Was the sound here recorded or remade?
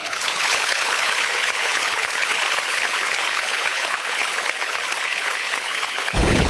remade